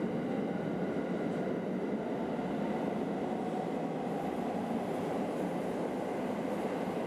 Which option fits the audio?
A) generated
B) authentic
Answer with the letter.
B